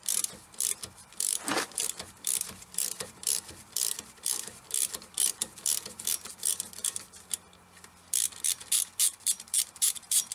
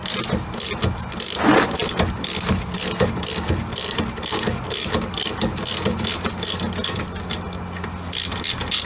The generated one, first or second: first